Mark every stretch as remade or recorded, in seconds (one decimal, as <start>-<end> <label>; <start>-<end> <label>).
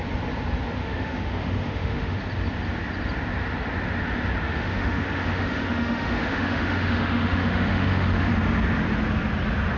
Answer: 0.0-0.8 recorded; 0.8-2.2 remade; 2.2-4.4 recorded; 4.4-8.3 remade; 8.3-9.8 recorded